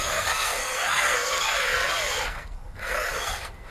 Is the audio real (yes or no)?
no